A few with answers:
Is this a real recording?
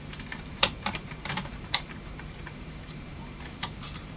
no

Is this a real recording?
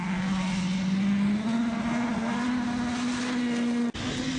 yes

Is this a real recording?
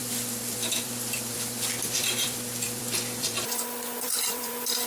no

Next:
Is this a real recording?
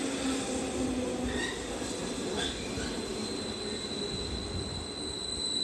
yes